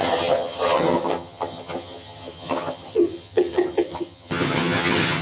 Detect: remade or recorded remade